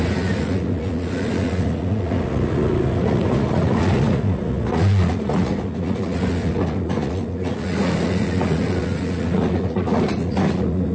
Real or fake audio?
fake